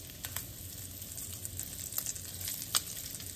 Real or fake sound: real